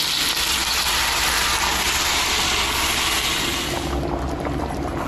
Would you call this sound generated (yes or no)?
no